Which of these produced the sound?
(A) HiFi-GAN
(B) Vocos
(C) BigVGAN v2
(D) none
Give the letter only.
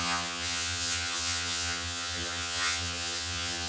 A